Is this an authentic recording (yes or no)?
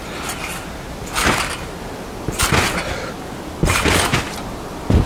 yes